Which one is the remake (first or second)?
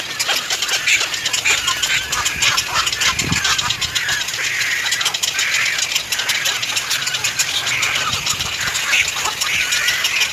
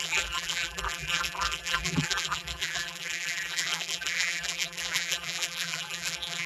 second